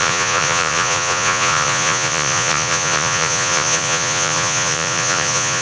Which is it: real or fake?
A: fake